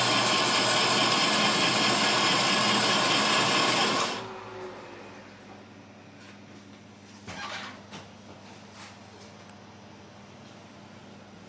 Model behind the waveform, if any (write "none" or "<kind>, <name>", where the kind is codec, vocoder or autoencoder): none